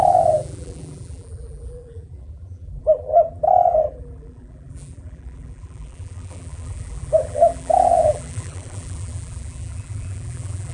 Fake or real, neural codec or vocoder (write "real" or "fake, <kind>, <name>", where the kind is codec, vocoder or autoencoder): fake, vocoder, BigVGAN v2